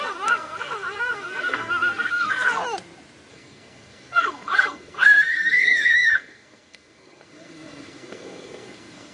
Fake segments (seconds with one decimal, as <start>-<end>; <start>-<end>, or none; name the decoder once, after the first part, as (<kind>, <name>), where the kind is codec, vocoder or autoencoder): 0.0-2.6 (codec, SNAC); 3.3-9.1